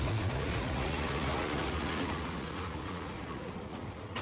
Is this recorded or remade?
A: remade